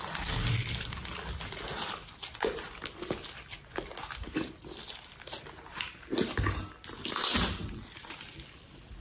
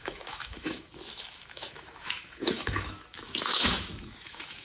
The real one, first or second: first